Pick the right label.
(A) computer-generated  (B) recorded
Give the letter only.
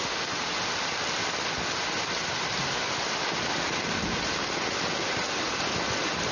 B